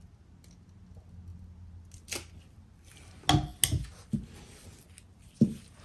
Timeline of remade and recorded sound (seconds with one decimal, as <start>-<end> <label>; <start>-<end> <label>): 0.0-5.8 recorded